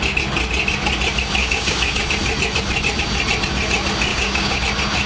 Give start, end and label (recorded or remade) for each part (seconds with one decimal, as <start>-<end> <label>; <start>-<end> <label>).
0.0-1.4 recorded; 1.4-2.0 remade; 2.0-4.1 recorded; 4.1-4.6 remade; 4.6-5.1 recorded